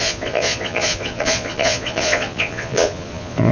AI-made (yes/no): yes